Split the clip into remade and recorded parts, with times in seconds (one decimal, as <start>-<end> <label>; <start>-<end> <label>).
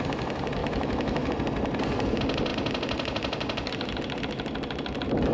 0.0-0.6 recorded; 0.6-1.3 remade; 1.3-5.3 recorded